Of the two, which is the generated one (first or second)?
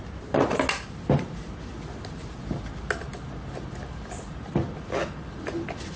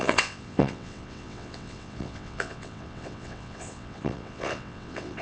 second